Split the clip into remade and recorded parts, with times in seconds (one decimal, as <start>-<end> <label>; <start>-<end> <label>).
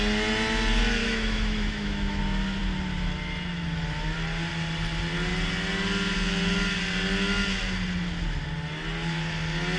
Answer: 0.0-1.0 recorded; 1.0-2.2 remade; 2.2-9.8 recorded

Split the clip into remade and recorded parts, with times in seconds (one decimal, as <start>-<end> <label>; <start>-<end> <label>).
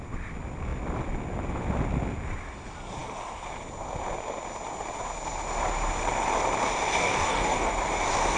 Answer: 0.0-7.0 recorded; 7.0-7.7 remade; 7.7-8.4 recorded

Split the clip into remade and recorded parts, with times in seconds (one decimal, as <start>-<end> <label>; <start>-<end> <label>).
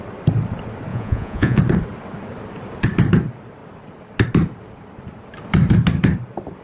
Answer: 0.0-0.9 recorded; 0.9-1.6 remade; 1.6-6.6 recorded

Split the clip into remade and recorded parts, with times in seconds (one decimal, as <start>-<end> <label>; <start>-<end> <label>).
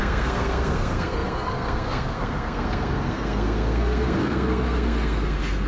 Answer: 0.0-5.7 remade